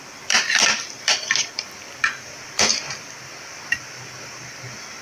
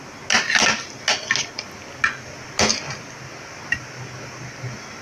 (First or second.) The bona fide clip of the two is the second